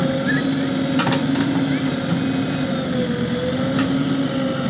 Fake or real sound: real